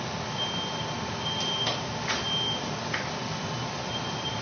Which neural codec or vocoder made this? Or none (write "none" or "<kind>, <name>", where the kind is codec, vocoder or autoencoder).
none